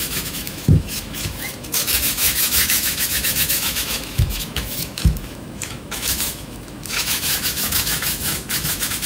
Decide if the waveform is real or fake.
fake